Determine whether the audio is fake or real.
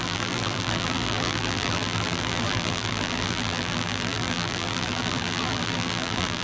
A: fake